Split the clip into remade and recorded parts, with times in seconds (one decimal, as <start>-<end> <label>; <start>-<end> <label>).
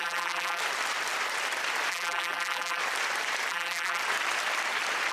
0.0-0.6 remade; 0.6-1.9 recorded; 1.9-2.8 remade; 2.8-3.5 recorded; 3.5-4.0 remade; 4.0-5.1 recorded